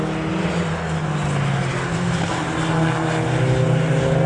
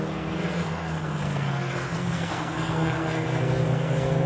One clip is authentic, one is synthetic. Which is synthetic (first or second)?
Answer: second